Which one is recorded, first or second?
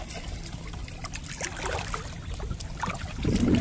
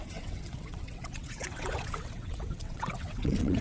first